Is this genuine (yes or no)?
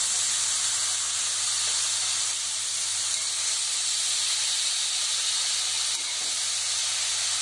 yes